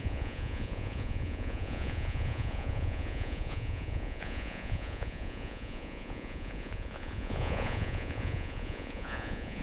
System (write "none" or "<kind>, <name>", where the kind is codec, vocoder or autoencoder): vocoder, Vocos